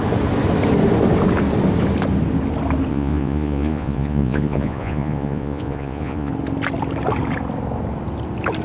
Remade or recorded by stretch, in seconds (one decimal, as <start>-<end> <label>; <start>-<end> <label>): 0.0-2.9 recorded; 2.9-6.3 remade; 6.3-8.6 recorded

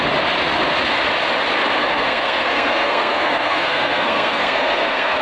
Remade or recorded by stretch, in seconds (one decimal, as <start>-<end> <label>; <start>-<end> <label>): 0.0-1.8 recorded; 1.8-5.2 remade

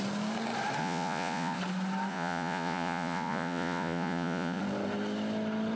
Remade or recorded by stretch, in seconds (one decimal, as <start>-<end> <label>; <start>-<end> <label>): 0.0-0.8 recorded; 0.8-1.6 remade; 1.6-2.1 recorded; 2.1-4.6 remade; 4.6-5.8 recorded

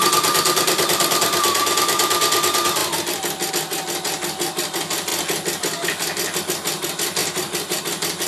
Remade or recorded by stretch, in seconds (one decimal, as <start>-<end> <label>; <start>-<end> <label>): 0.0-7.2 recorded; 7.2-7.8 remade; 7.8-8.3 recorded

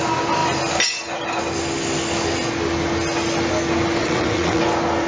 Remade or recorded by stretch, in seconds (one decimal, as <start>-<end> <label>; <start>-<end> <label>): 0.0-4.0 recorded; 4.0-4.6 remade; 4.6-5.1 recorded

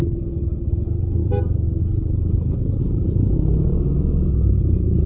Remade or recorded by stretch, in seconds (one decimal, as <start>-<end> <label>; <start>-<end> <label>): 0.0-1.2 remade; 1.2-1.8 recorded; 1.8-2.8 remade; 2.8-4.3 recorded; 4.3-5.1 remade